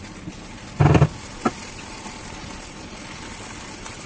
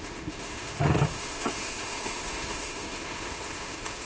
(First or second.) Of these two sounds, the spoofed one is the second